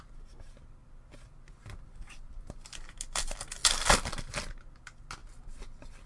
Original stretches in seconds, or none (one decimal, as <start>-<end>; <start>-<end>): 0.0-6.1